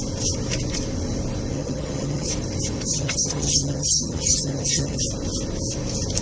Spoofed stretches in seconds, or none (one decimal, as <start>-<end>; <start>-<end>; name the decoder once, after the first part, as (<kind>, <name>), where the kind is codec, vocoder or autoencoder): 1.5-2.3 (vocoder, HiFi-GAN); 2.9-5.0